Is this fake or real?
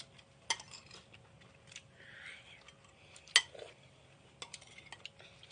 real